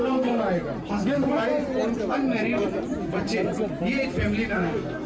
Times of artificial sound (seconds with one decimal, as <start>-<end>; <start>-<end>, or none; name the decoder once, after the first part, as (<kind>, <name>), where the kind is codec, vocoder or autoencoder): 0.0-0.4 (codec, SNAC); 0.9-1.4; 4.5-5.1